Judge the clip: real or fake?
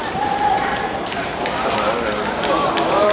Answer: real